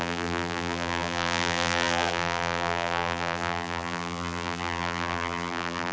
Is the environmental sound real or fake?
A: fake